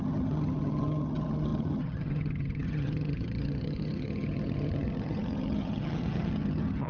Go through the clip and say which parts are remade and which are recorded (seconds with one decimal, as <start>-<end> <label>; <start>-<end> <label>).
0.0-6.9 remade